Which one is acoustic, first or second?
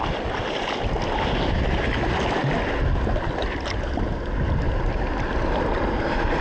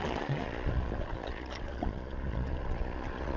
first